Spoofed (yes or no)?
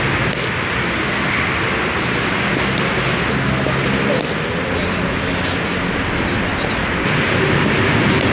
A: no